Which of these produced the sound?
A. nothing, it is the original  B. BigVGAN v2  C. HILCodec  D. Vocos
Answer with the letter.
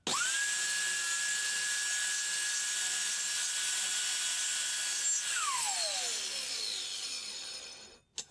A